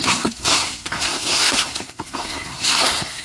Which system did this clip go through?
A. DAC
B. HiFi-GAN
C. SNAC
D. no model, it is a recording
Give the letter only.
C